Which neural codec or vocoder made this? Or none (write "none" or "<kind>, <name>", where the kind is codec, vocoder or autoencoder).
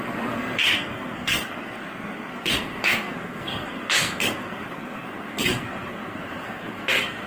codec, SNAC